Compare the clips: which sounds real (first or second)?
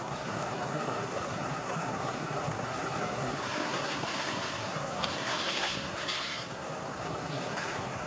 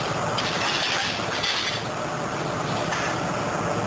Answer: second